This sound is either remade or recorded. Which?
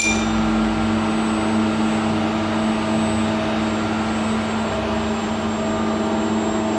recorded